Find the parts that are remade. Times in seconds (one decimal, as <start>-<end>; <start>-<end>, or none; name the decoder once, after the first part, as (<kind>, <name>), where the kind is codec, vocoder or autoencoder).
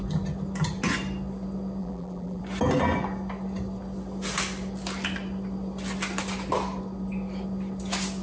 1.8-2.4 (vocoder, BigVGAN v2)